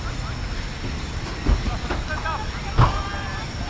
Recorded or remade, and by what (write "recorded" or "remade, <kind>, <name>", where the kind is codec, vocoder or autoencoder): recorded